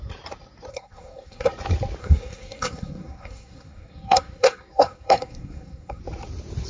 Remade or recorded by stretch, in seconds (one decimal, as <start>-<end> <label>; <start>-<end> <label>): 0.0-0.7 recorded; 0.7-1.5 remade; 1.5-2.0 recorded; 2.0-6.0 remade; 6.0-6.7 recorded